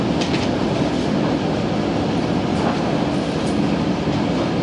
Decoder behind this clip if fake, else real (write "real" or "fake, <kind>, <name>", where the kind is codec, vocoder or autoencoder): real